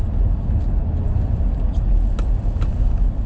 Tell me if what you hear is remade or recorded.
recorded